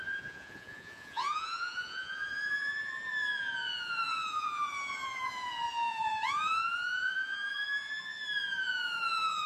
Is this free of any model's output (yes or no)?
no